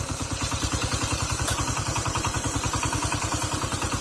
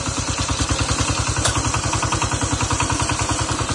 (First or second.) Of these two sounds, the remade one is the first